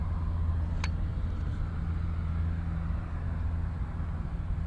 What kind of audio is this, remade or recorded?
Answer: recorded